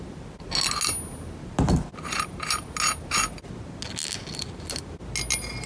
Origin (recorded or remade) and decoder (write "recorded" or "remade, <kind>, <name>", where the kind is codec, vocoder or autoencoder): recorded